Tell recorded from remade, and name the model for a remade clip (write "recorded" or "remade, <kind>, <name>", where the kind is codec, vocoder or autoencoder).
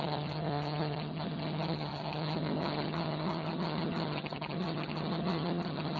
remade, vocoder, HiFi-GAN